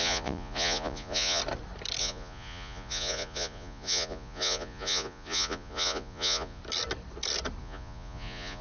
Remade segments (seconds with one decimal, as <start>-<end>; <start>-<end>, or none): 0.0-1.4; 2.0-6.6; 7.6-8.6